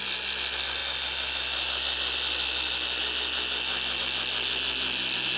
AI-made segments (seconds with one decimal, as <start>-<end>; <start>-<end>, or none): none

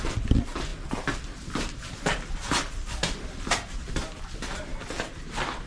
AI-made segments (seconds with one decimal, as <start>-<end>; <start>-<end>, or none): none

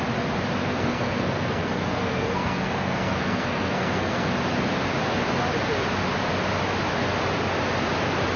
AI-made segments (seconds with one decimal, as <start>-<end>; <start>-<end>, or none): 0.6-4.3

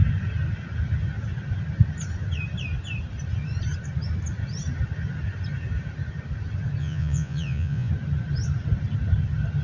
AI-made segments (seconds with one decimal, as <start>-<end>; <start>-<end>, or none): 6.8-7.9

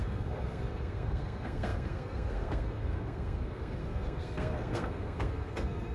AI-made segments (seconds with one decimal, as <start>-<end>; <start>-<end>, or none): 0.0-5.9